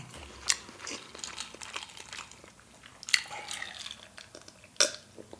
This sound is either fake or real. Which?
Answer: real